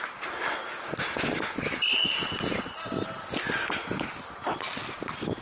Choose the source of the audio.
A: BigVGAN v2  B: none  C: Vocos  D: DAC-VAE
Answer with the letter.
B